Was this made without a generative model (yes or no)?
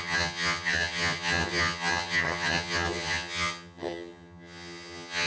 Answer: no